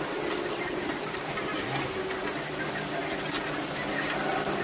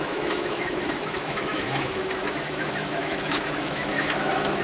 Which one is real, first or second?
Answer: first